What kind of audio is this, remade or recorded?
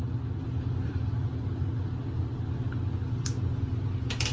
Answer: recorded